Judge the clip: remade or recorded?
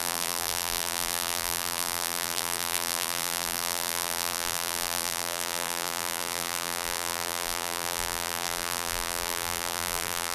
remade